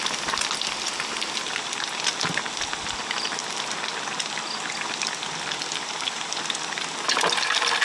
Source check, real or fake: real